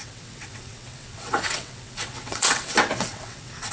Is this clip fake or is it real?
fake